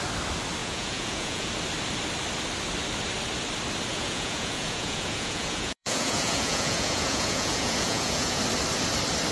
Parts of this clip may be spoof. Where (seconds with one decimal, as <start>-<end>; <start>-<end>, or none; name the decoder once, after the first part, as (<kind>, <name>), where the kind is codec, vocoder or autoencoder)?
0.6-1.5 (vocoder, Vocos); 3.9-8.4